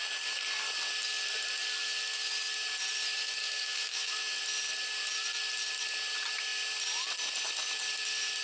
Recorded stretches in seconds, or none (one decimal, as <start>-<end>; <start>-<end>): 0.0-3.4; 4.4-8.4